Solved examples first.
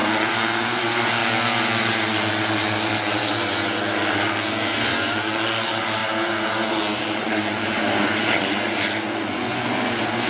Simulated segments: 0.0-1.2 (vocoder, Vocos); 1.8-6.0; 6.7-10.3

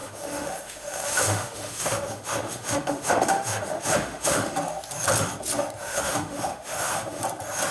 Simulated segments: 0.0-4.5 (autoencoder, DAC-VAE); 5.8-7.2

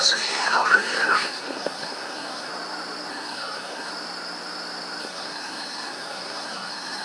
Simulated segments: 0.0-2.5 (codec, SNAC); 3.1-3.9; 5.0-7.0

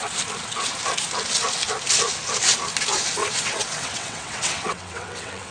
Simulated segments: 3.2-5.5 (vocoder, WaveNeXt)

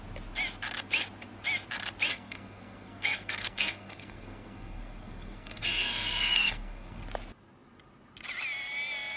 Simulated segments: 2.1-7.0 (codec, SNAC)